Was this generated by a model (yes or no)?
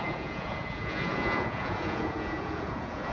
yes